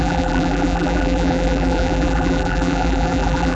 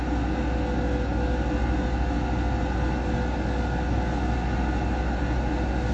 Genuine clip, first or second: second